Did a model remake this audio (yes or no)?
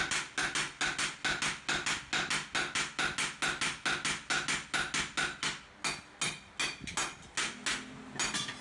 no